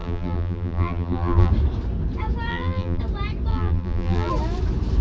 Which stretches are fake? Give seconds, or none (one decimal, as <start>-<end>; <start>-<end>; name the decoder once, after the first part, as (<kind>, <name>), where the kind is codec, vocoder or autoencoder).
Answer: 0.0-1.5 (vocoder, BigVGAN v2); 2.5-3.0; 3.5-4.3